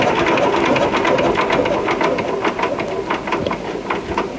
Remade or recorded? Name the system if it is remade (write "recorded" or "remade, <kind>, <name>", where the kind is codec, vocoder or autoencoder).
recorded